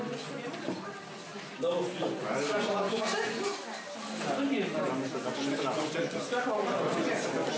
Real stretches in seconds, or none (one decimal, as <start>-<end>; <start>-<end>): 0.0-7.6

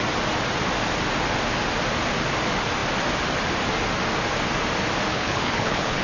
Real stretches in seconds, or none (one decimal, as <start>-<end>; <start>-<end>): 0.0-5.1

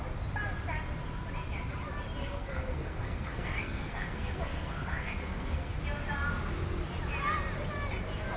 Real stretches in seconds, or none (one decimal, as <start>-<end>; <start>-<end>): 0.0-2.2; 5.8-8.4

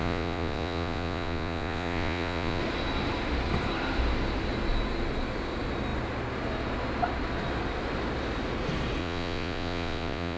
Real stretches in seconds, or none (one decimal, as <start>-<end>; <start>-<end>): 2.6-9.0

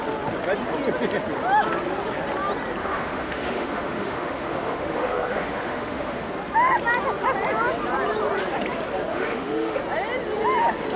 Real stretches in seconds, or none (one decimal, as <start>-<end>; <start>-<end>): 0.0-2.8; 6.3-9.1; 9.8-11.0

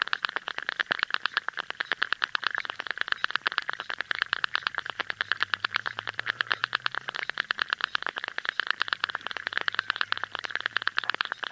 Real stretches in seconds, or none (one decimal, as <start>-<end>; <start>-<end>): 3.2-3.8

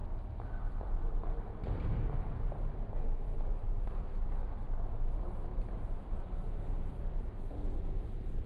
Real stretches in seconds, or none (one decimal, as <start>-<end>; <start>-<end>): 0.0-3.3; 4.3-5.5; 6.9-8.5

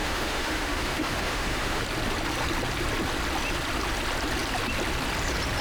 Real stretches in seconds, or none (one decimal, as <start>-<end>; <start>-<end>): 1.8-5.6